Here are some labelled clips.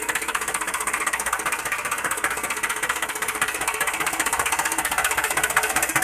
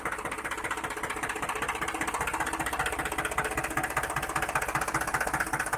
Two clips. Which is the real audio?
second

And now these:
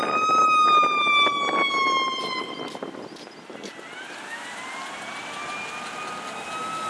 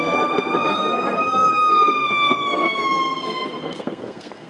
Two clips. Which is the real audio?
first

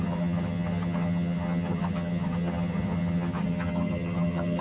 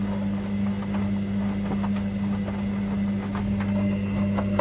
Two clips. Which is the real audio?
second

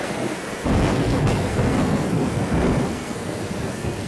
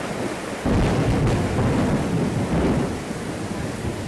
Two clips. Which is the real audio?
second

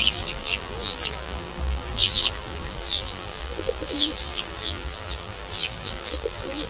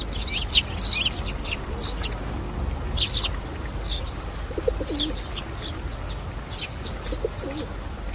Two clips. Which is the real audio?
second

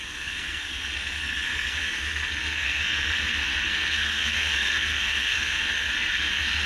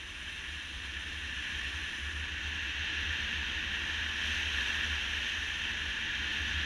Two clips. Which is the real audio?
second